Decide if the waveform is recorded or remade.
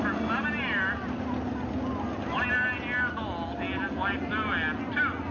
recorded